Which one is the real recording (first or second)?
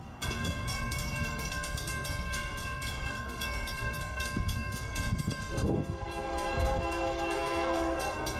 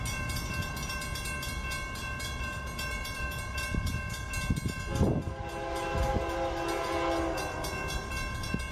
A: second